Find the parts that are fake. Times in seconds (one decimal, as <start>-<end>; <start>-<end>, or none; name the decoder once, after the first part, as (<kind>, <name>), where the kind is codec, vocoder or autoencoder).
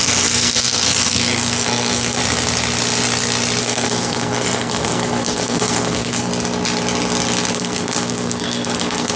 0.0-2.2 (codec, SNAC); 3.6-6.3; 7.5-9.2